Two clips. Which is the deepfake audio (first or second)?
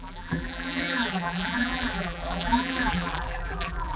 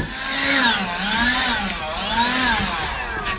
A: first